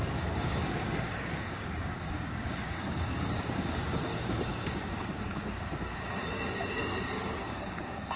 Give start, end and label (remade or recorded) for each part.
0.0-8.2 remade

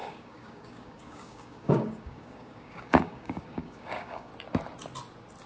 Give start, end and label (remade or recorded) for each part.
0.0-4.3 remade; 4.3-5.5 recorded

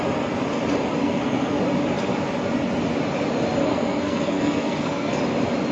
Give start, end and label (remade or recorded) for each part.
0.0-1.0 recorded; 1.0-1.6 remade; 1.6-3.7 recorded; 3.7-5.2 remade; 5.2-5.7 recorded

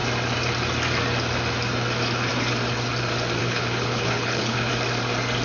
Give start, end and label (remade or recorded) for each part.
0.0-3.4 recorded; 3.4-4.7 remade; 4.7-5.4 recorded

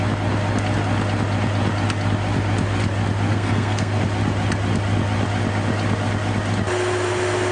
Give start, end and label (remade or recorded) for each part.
0.0-3.3 recorded; 3.3-4.0 remade; 4.0-7.5 recorded

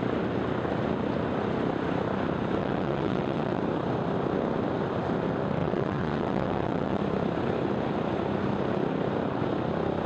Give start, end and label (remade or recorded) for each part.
0.0-2.6 recorded; 2.6-3.6 remade; 3.6-5.6 recorded; 5.6-7.0 remade; 7.0-10.1 recorded